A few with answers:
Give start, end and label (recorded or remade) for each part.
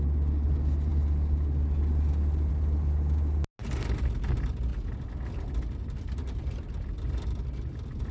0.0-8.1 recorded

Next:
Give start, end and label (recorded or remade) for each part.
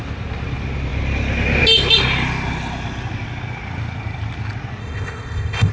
0.0-4.8 recorded; 4.8-5.7 remade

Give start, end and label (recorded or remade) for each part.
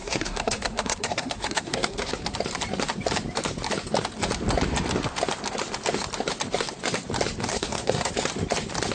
0.0-2.1 remade; 2.1-7.5 recorded; 7.5-8.1 remade; 8.1-8.9 recorded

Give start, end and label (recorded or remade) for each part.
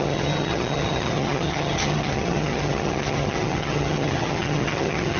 0.0-5.2 remade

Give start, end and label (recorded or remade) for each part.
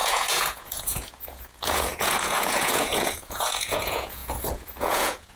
0.0-5.4 remade